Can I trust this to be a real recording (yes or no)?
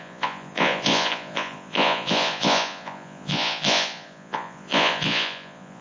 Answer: no